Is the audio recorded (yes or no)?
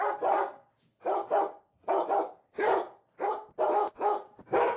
yes